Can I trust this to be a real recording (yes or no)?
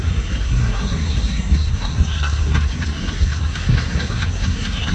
no